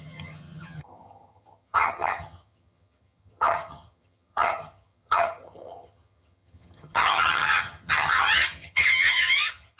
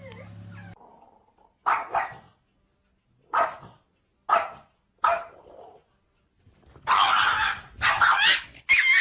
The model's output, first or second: first